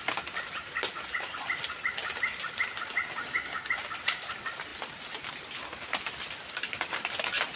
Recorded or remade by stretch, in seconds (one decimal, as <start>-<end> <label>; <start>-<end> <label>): 0.0-3.2 recorded; 3.2-3.7 remade; 3.7-7.6 recorded